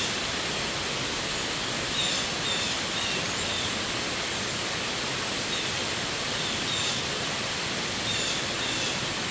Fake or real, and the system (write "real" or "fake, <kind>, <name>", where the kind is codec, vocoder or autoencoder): real